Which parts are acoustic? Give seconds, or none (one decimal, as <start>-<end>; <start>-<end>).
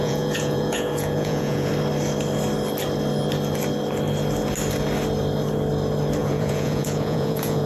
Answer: 1.7-6.2